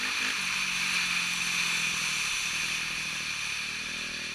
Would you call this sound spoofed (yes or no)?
no